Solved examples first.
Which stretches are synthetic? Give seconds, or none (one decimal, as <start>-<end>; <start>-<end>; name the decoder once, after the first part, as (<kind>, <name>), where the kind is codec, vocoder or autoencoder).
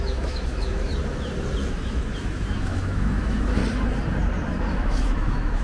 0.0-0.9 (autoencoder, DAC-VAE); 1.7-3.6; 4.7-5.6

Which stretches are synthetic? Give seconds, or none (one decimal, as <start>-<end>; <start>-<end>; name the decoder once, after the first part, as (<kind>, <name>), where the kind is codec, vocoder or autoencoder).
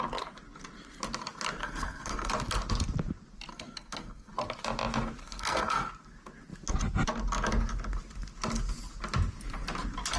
1.6-2.3 (codec, SNAC); 3.5-4.3; 5.2-5.9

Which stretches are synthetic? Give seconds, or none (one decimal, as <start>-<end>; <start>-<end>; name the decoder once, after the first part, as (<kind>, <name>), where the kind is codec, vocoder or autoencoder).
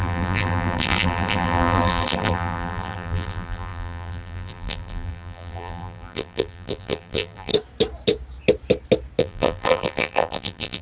0.0-7.5 (vocoder, BigVGAN v2); 9.2-10.8